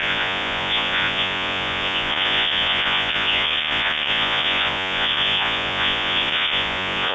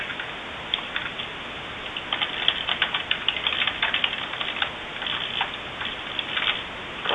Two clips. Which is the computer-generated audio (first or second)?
first